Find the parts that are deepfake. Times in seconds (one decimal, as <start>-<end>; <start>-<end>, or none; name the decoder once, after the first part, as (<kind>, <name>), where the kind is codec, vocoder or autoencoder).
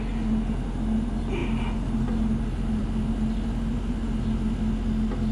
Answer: none